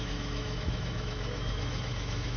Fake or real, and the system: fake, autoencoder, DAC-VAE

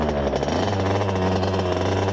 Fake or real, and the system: real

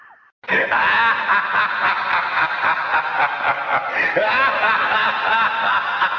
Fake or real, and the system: real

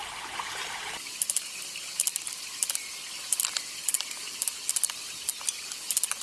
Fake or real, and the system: real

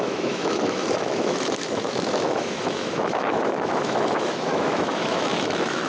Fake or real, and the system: fake, autoencoder, DAC-VAE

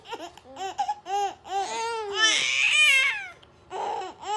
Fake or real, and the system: real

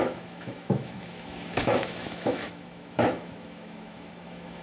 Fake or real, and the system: fake, autoencoder, DAC-VAE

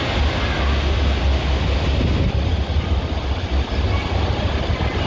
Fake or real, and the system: real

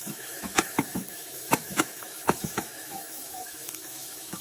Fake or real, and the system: fake, autoencoder, DAC-VAE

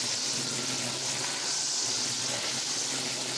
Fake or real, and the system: real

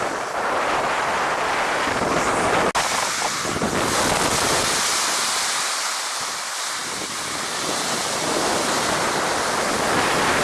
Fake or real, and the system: real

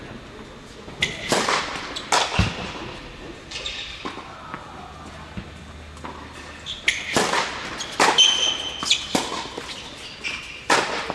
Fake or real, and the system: real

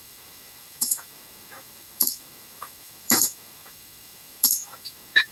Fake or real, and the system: fake, autoencoder, DAC-VAE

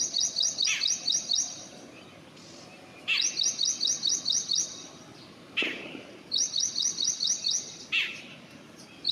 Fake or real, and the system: real